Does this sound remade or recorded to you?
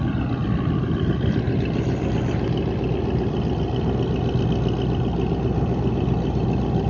recorded